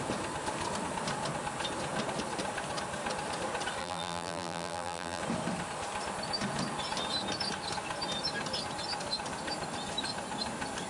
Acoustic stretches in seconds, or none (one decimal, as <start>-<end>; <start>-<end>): 0.0-3.8; 5.2-10.9